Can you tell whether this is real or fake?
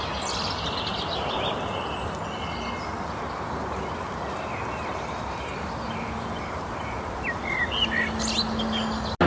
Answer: real